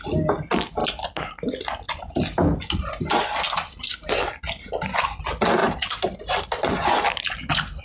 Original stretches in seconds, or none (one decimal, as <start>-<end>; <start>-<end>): 0.0-7.8